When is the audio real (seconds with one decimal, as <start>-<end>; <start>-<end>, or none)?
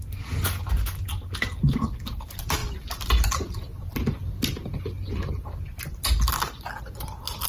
0.0-2.6; 5.6-7.5